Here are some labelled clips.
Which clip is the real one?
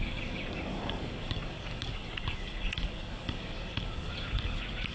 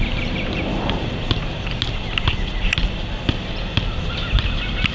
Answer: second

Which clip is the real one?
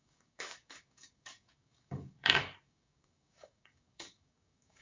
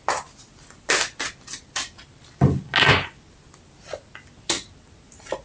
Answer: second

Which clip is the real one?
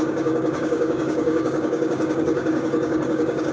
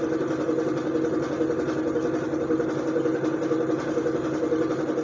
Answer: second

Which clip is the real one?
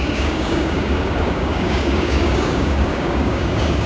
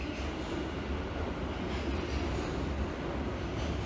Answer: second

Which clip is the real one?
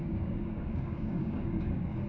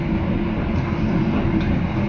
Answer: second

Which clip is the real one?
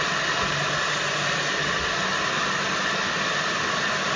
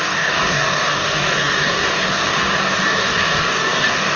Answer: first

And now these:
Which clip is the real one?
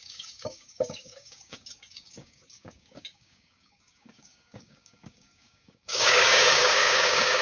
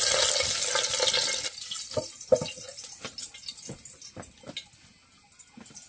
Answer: second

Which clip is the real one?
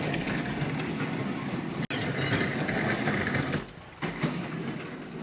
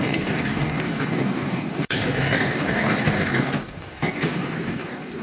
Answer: first